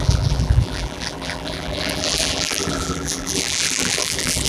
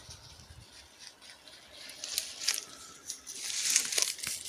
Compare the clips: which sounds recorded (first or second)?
second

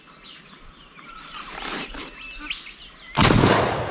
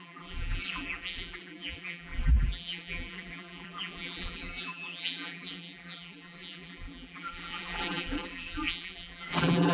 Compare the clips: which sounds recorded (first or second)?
first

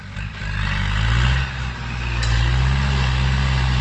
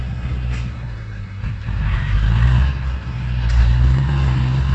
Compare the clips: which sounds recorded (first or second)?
first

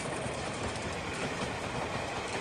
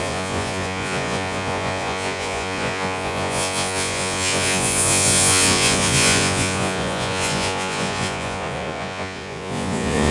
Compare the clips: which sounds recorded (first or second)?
first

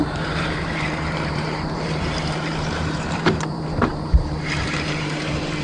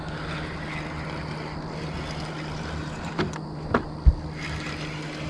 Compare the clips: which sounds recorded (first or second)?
second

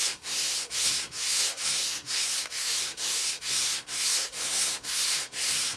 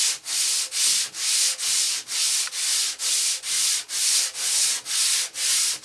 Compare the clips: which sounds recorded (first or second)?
second